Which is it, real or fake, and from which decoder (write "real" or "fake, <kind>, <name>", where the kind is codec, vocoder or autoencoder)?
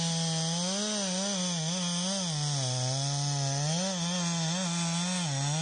real